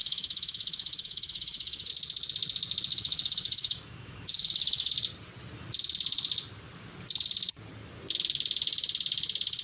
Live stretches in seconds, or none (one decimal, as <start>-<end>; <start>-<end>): 1.9-2.9; 4.9-9.6